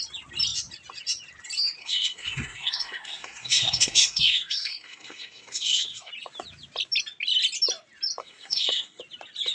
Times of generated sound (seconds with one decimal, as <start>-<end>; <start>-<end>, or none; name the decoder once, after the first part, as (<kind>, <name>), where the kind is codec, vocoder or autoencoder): 1.8-6.1 (codec, SNAC); 8.2-9.0